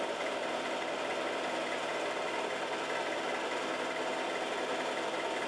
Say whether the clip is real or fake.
real